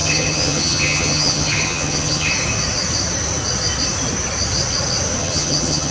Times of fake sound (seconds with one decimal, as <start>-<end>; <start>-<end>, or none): 0.0-2.3; 5.2-5.9